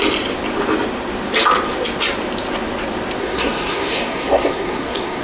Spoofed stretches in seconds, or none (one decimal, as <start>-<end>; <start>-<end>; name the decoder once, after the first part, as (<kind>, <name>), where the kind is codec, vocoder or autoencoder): 3.2-5.2 (codec, SNAC)

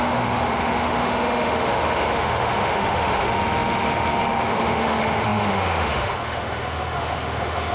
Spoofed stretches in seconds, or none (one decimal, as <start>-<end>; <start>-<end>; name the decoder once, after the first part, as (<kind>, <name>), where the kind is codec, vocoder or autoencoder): 0.0-7.7 (autoencoder, DAC-VAE)